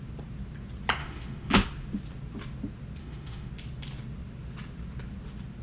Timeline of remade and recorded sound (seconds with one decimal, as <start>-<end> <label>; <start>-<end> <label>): 0.0-1.0 recorded; 1.0-1.5 remade; 1.5-3.0 recorded; 3.0-3.5 remade; 3.5-5.6 recorded